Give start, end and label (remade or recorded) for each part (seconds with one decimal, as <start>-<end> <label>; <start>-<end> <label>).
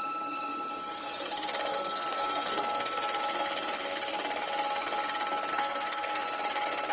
0.0-1.7 recorded; 1.7-3.2 remade; 3.2-5.5 recorded; 5.5-6.2 remade; 6.2-6.9 recorded